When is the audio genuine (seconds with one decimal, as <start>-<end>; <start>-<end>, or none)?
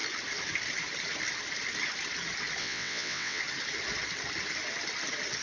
0.0-2.6; 3.4-5.4